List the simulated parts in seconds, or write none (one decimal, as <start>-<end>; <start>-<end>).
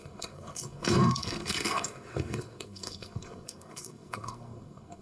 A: 0.0-5.0